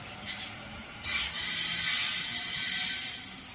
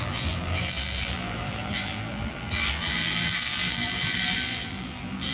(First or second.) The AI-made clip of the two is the second